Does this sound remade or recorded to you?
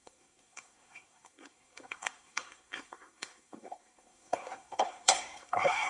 remade